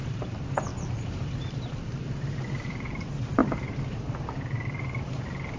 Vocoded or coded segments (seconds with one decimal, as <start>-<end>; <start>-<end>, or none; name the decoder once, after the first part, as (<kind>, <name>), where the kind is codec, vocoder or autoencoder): 0.0-5.6 (vocoder, BigVGAN v2)

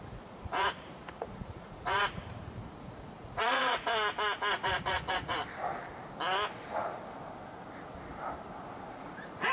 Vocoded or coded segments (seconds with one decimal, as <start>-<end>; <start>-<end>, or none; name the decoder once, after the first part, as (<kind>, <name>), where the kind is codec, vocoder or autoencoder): 0.0-3.9 (vocoder, Vocos); 4.5-5.4; 9.0-9.5

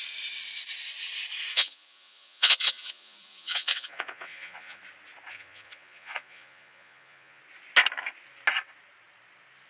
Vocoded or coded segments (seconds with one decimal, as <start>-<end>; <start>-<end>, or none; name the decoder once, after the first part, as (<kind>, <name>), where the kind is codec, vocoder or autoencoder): 1.5-4.8 (vocoder, Vocos); 5.3-7.4

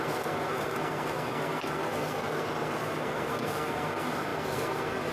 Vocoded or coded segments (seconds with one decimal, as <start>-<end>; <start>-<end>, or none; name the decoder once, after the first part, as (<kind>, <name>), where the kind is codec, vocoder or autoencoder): 0.0-5.1 (codec, SNAC)

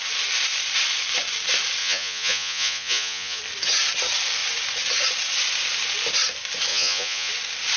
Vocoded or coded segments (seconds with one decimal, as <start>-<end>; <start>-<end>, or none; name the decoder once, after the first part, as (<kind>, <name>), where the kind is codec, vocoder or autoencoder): 1.8-3.4 (vocoder, Vocos); 6.7-7.3

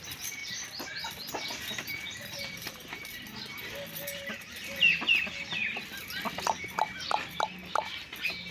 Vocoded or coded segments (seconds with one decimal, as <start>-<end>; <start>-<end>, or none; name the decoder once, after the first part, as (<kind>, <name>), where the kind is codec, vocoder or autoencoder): 0.4-4.5 (vocoder, BigVGAN v2); 5.6-7.3

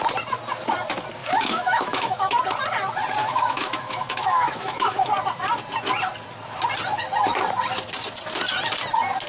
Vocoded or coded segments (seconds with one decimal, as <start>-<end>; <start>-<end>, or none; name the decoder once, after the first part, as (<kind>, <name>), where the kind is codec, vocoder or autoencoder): 1.2-2.4 (autoencoder, DAC-VAE); 3.2-5.1

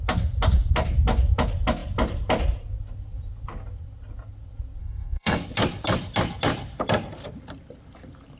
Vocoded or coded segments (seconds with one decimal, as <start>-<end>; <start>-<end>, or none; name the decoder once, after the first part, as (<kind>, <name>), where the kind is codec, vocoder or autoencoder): 4.8-5.4 (codec, SNAC)